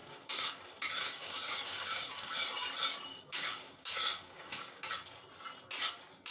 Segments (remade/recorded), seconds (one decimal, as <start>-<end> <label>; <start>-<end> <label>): 0.0-0.6 remade; 0.6-1.0 recorded; 1.0-2.3 remade; 2.3-3.1 recorded; 3.1-4.9 remade; 4.9-6.3 recorded